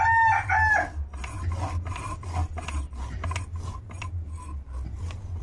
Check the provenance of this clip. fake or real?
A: real